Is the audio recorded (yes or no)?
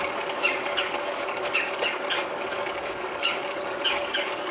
no